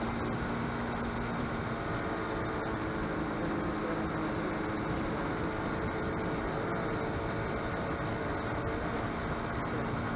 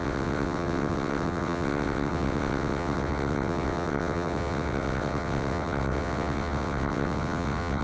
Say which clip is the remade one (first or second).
second